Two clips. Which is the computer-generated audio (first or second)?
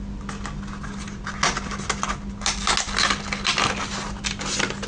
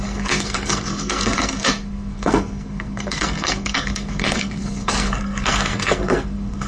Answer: second